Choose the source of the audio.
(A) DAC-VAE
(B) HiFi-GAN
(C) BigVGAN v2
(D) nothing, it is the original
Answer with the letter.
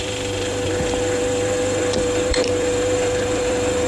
C